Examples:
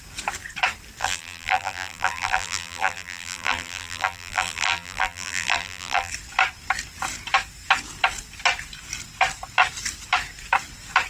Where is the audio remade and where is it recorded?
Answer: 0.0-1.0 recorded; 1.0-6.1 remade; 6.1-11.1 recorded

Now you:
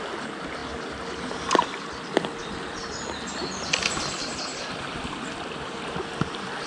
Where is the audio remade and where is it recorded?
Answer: 0.0-2.8 recorded; 2.8-6.7 remade

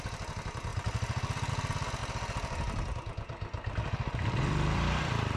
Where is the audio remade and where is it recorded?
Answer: 0.0-0.7 recorded; 0.7-1.5 remade; 1.5-2.0 recorded; 2.0-5.4 remade

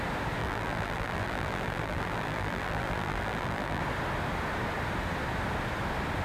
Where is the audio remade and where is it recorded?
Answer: 0.0-0.4 recorded; 0.4-3.8 remade; 3.8-6.2 recorded

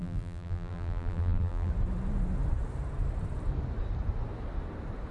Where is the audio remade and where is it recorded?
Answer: 0.0-1.7 remade; 1.7-5.1 recorded

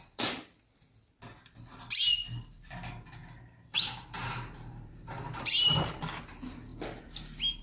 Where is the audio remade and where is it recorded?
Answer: 0.0-3.2 recorded; 3.2-6.0 remade; 6.0-7.6 recorded

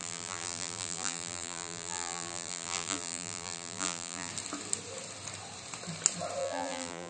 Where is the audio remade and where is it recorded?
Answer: 0.0-4.3 remade; 4.3-6.4 recorded; 6.4-7.1 remade